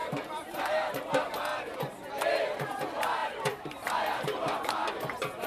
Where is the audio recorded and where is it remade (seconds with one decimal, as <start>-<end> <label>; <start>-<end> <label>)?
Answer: 0.0-1.0 remade; 1.0-3.2 recorded; 3.2-4.9 remade; 4.9-5.5 recorded